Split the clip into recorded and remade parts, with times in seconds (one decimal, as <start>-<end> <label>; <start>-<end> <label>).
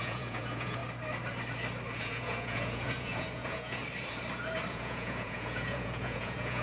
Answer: 0.0-0.8 remade; 0.8-2.0 recorded; 2.0-3.8 remade; 3.8-4.7 recorded; 4.7-6.6 remade